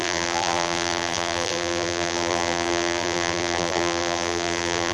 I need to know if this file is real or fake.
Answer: fake